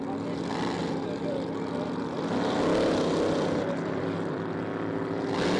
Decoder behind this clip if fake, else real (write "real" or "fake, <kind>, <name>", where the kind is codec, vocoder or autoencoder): real